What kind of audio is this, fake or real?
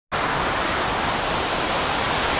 real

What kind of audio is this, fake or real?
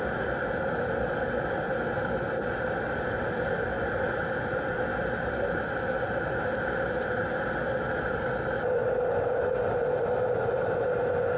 real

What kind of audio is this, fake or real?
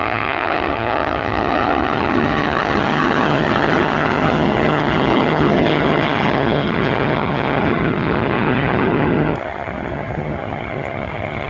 fake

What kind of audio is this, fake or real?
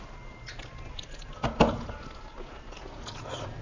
real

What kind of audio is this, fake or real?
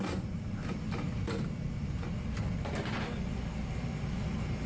real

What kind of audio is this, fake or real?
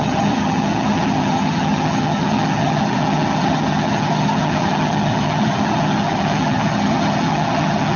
fake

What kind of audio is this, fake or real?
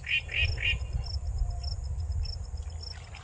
real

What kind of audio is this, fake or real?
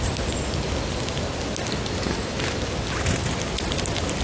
real